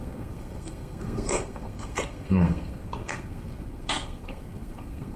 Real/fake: fake